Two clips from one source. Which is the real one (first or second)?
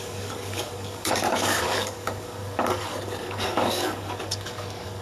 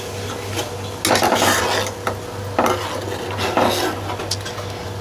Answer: second